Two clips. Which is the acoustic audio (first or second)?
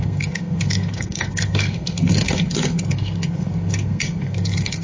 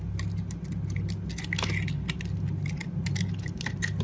second